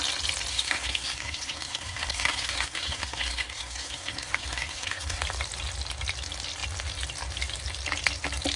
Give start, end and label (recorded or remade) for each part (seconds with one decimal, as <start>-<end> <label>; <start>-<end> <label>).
0.0-0.5 recorded; 0.5-5.2 remade; 5.2-8.6 recorded